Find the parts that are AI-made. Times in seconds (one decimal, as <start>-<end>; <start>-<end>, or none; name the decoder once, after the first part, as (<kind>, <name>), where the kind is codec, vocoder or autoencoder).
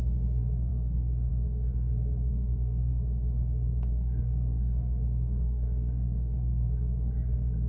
0.0-2.9 (codec, SNAC); 3.9-7.7